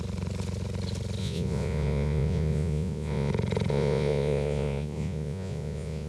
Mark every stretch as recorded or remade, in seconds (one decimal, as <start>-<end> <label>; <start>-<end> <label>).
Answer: 0.0-1.2 recorded; 1.2-3.3 remade; 3.3-3.7 recorded; 3.7-6.1 remade